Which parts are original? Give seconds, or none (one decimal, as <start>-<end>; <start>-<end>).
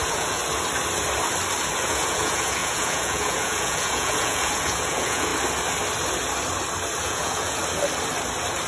0.4-1.7; 5.3-7.0; 7.6-8.7